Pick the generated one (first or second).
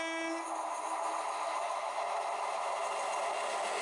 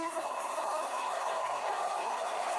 second